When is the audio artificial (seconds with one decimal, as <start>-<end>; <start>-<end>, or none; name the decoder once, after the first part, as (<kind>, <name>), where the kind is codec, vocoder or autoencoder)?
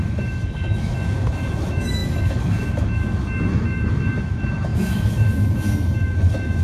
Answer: 0.0-6.6 (autoencoder, DAC-VAE)